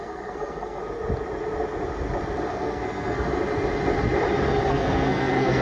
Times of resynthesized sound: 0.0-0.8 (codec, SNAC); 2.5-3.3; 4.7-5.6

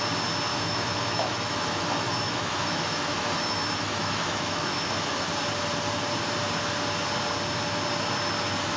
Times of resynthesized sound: 0.5-5.3 (autoencoder, DAC-VAE)

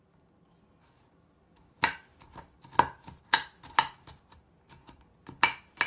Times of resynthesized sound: none

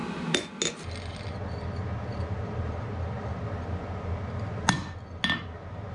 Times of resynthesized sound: none

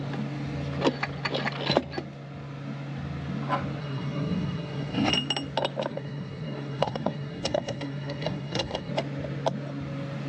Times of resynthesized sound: 3.8-5.1 (codec, SNAC); 5.9-8.9

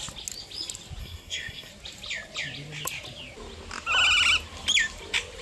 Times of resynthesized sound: 1.0-1.7 (codec, SNAC)

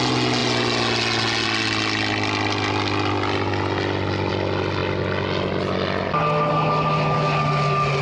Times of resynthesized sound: none